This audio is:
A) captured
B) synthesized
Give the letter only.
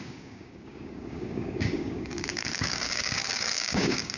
B